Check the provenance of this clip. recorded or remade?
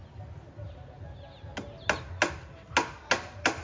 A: recorded